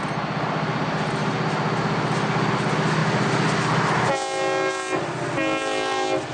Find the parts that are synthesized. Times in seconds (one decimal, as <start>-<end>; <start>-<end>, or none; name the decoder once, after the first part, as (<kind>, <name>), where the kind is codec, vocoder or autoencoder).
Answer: none